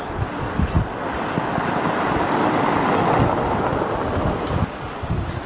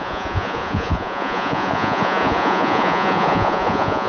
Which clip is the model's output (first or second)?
second